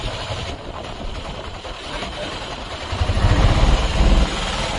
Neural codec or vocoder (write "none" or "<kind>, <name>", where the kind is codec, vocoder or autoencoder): vocoder, BigVGAN v2